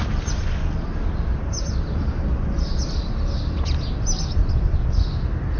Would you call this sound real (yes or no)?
yes